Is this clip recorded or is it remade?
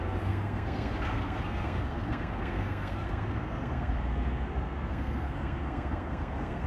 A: remade